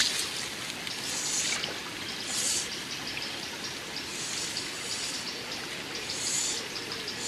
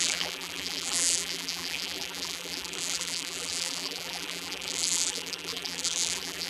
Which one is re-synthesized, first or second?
second